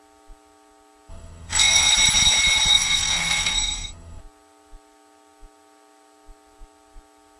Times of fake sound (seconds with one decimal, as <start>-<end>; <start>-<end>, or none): 1.1-1.9; 2.7-4.2